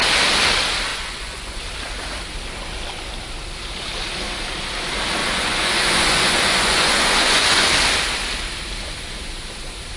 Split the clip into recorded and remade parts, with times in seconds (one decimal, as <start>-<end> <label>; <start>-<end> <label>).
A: 0.0-0.9 recorded; 0.9-1.6 remade; 1.6-5.2 recorded; 5.2-7.7 remade; 7.7-10.0 recorded